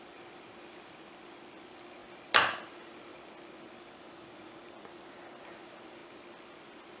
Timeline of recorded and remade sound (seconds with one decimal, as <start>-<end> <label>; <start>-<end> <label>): 0.0-2.0 remade; 2.0-2.7 recorded; 2.7-3.1 remade; 3.1-4.8 recorded; 4.8-6.0 remade; 6.0-6.6 recorded; 6.6-7.0 remade